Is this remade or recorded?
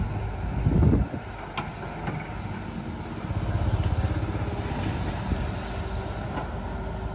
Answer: recorded